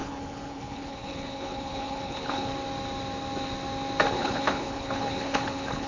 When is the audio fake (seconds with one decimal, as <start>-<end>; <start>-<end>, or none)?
0.0-2.5; 4.1-5.9